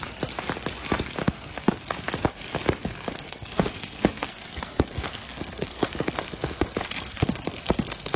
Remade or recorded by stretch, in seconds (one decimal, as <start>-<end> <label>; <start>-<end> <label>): 0.0-1.2 recorded; 1.2-1.9 remade; 1.9-3.1 recorded; 3.1-8.2 remade